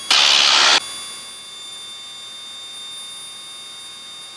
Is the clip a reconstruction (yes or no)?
no